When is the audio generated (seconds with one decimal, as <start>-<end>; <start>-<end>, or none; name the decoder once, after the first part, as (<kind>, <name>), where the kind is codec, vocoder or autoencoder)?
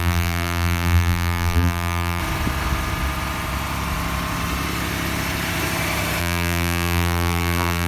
0.0-2.2 (vocoder, BigVGAN v2); 6.2-7.9